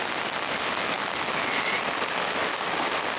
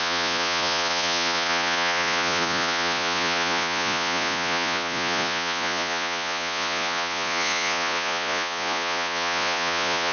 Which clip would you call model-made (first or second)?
second